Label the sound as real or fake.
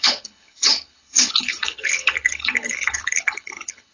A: fake